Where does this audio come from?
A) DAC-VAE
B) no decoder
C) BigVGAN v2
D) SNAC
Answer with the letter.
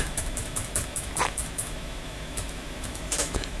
A